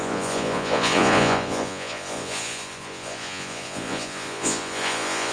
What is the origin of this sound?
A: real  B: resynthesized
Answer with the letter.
B